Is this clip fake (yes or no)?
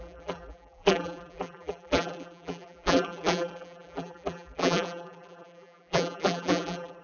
yes